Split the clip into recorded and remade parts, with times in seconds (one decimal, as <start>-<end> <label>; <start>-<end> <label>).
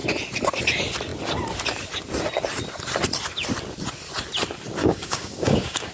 0.0-4.8 recorded; 4.8-5.9 remade